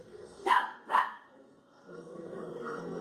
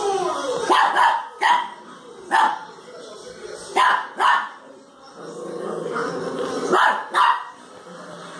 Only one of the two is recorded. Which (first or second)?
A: second